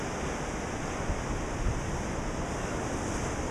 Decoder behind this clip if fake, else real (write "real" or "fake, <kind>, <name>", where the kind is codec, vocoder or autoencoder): real